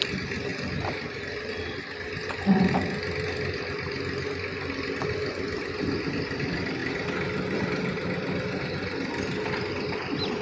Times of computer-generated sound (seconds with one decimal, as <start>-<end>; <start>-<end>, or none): none